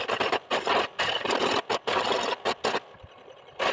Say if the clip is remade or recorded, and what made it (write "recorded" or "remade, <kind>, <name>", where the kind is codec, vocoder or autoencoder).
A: recorded